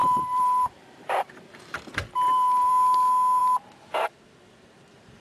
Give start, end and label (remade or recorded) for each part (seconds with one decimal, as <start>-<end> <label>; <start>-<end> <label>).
0.0-2.7 remade; 2.7-5.2 recorded